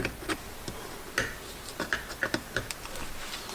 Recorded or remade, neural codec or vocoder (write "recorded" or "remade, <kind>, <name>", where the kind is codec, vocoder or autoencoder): recorded